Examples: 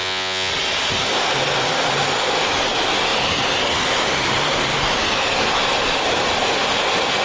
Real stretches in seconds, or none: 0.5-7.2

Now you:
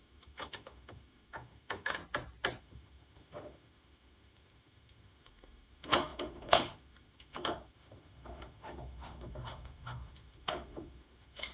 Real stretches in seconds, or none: 2.0-2.6

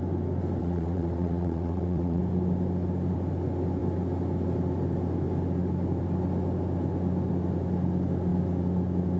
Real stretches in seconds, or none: 0.0-0.6; 2.2-9.2

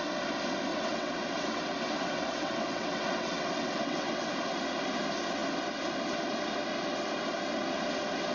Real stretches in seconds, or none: 0.0-0.7; 4.3-8.3